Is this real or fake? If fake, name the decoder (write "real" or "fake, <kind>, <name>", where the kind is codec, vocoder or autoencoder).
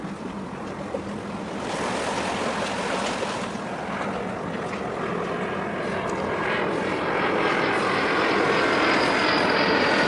real